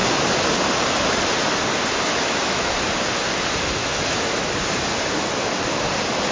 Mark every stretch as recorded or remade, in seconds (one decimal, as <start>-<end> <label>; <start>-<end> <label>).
0.0-2.1 recorded; 2.1-2.7 remade; 2.7-3.8 recorded; 3.8-4.5 remade; 4.5-6.3 recorded